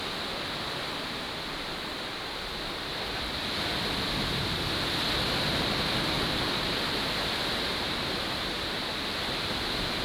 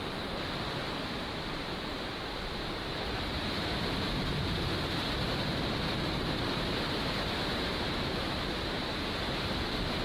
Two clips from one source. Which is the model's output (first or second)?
second